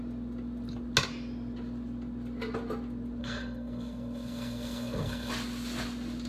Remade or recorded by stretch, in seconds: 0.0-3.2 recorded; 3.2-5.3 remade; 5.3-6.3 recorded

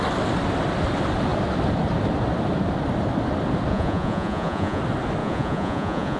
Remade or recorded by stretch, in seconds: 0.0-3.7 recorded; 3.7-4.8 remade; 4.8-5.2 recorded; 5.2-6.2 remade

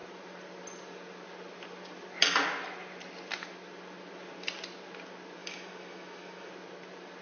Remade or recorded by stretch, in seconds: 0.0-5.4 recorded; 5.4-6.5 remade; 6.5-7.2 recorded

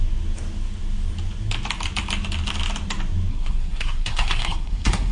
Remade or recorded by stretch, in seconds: 0.0-3.3 recorded; 3.3-5.1 remade

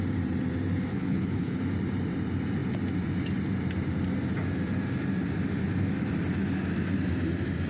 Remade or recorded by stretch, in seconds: 0.0-0.9 recorded; 0.9-1.6 remade; 1.6-7.7 recorded

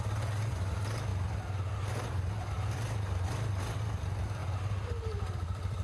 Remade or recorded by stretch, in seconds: 0.0-1.1 remade; 1.1-1.9 recorded; 1.9-5.8 remade

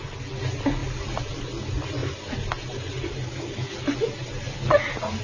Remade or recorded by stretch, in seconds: 0.0-5.2 recorded

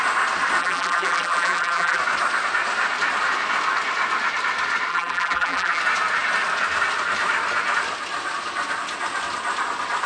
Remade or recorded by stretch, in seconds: 0.0-0.6 recorded; 0.6-2.0 remade; 2.0-4.9 recorded; 4.9-5.8 remade; 5.8-10.1 recorded